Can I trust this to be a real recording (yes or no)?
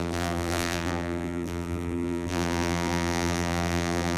no